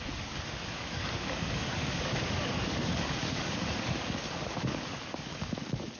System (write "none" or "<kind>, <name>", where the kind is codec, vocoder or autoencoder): codec, DAC